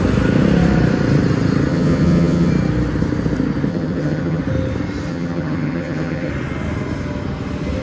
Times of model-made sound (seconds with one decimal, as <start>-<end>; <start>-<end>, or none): 1.7-2.5; 3.7-4.4; 5.1-6.3

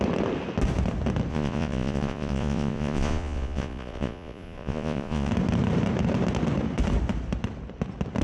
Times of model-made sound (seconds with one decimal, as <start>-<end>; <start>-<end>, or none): 1.3-5.3

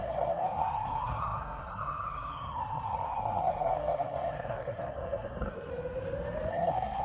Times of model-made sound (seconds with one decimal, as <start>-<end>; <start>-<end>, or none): 0.0-5.7; 6.5-7.0

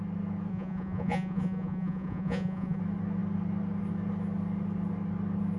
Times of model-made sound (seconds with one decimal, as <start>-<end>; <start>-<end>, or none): 0.5-2.8

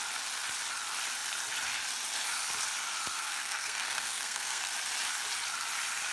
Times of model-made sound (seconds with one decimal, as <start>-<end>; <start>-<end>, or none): 3.1-4.7

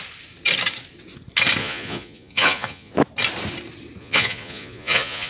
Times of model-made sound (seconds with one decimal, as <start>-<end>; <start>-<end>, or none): 1.6-2.9; 4.0-5.3